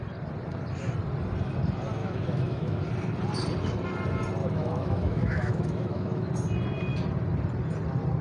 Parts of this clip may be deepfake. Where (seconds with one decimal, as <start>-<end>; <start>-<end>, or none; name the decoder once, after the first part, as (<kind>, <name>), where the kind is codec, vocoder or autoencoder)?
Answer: 2.0-2.8 (autoencoder, DAC-VAE); 4.4-6.3